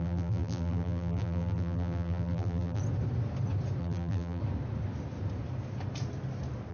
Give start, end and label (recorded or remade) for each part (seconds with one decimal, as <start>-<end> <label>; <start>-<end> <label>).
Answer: 0.0-2.8 remade; 2.8-3.8 recorded; 3.8-4.4 remade; 4.4-6.7 recorded